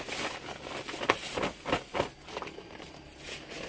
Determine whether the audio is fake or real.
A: real